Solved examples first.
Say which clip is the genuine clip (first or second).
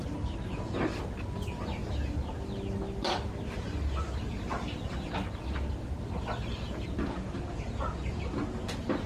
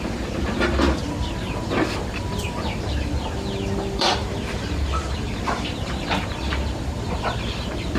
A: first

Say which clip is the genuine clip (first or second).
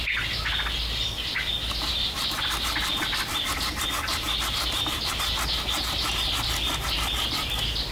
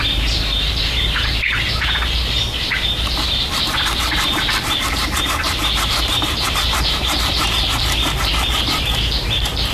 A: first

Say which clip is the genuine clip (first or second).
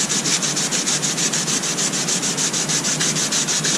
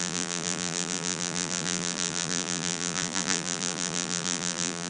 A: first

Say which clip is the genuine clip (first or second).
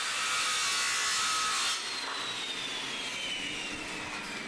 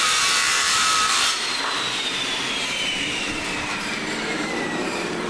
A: first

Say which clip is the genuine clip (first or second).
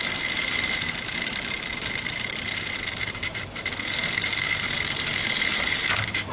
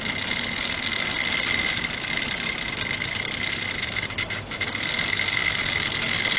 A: second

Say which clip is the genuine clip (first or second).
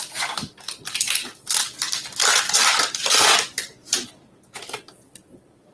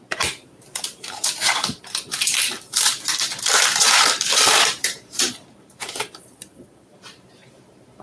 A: first